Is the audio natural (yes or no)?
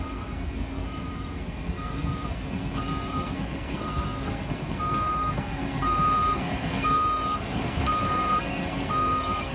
no